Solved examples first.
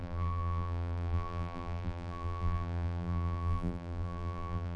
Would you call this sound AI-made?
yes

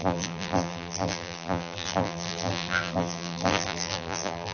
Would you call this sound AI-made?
yes